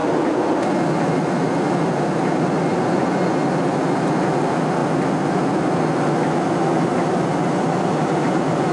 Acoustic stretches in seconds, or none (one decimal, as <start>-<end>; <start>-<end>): 0.0-8.7